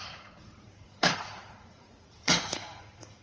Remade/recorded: remade